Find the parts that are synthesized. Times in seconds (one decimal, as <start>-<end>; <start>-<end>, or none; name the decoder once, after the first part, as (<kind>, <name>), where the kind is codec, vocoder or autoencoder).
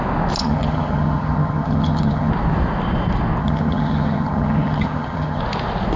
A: 0.4-2.3 (vocoder, HiFi-GAN); 3.4-5.4